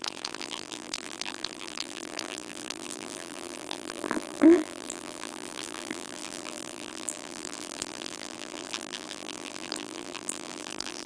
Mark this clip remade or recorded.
remade